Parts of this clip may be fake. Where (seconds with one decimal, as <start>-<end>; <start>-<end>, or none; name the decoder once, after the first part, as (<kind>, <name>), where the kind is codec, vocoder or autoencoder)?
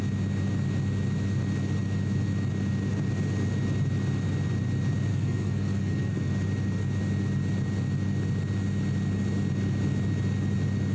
5.1-6.3 (codec, SNAC)